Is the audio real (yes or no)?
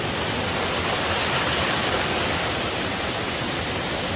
yes